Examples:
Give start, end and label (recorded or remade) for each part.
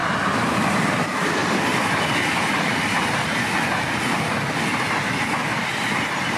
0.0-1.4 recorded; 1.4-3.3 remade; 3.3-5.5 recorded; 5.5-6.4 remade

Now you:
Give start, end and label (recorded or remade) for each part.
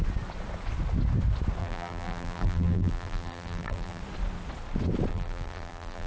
0.0-1.6 recorded; 1.6-4.0 remade; 4.0-5.1 recorded; 5.1-6.1 remade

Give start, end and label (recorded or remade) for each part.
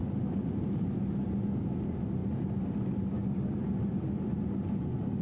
0.0-5.2 recorded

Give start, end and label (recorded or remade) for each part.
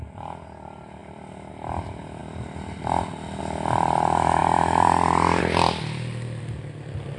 0.0-2.2 remade; 2.2-3.4 recorded; 3.4-7.2 remade